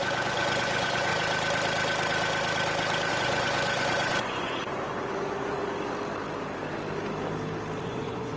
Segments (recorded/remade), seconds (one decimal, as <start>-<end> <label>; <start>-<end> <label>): 0.0-1.1 remade; 1.1-3.1 recorded; 3.1-5.6 remade; 5.6-7.8 recorded; 7.8-8.4 remade